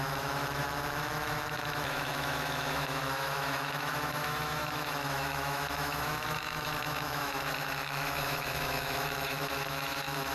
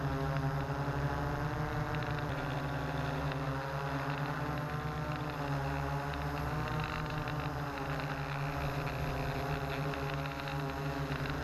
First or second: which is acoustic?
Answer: second